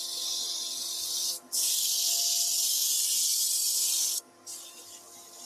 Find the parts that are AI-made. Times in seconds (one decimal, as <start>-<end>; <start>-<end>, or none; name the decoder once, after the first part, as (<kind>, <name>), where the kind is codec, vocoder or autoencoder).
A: none